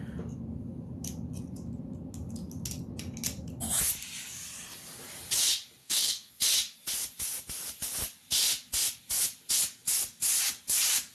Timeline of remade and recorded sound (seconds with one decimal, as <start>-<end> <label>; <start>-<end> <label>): 0.0-5.8 recorded; 5.8-6.3 remade; 6.3-11.1 recorded